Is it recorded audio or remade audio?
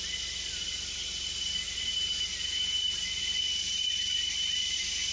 recorded